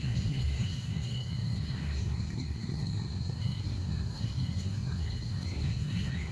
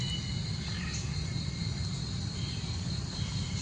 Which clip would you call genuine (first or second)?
second